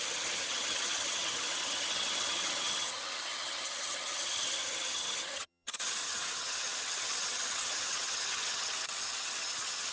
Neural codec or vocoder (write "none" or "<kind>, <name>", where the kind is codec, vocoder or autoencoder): vocoder, HiFi-GAN